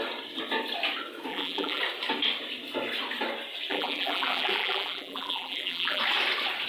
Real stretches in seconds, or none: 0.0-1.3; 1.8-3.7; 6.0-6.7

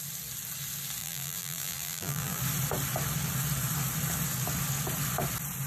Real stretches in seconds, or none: 0.0-1.0; 2.4-5.7

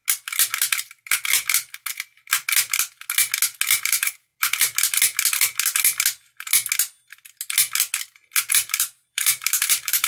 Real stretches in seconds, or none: 0.0-3.8; 4.3-8.5

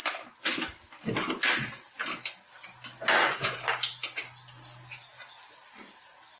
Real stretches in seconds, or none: 0.0-6.4

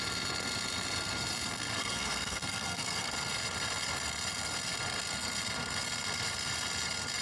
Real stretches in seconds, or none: 0.0-1.8; 3.1-7.2

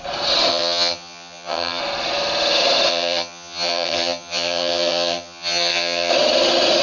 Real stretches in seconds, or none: 0.0-0.5; 1.8-2.9; 6.1-6.8

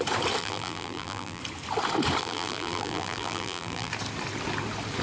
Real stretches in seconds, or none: 0.0-0.4; 1.4-2.2; 3.9-5.0

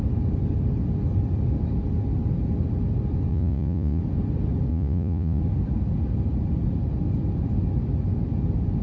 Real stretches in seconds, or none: 0.0-3.3; 4.0-4.7; 5.4-8.8